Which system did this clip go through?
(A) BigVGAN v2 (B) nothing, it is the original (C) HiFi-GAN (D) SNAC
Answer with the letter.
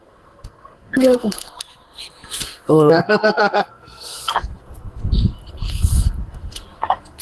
D